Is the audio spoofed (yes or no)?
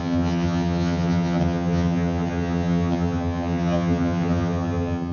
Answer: yes